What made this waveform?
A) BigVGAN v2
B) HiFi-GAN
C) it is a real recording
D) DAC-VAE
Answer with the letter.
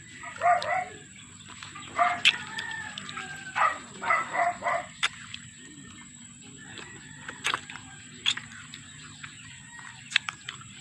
A